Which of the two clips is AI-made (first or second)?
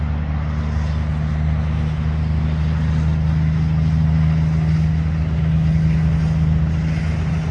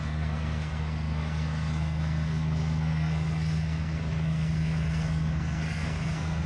second